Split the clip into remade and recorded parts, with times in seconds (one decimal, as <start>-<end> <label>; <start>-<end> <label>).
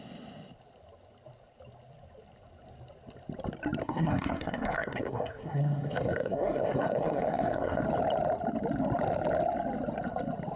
0.0-3.8 recorded; 3.8-7.8 remade; 7.8-10.6 recorded